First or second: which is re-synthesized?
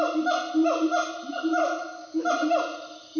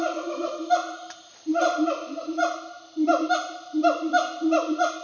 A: second